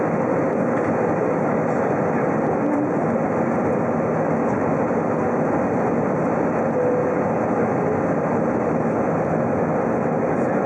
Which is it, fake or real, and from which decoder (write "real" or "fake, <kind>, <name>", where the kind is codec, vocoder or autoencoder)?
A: real